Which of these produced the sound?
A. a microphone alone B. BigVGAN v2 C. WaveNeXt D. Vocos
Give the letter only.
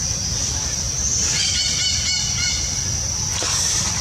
A